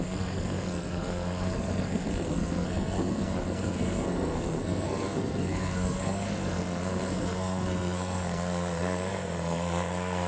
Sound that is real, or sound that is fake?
fake